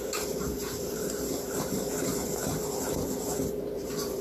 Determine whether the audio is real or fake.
fake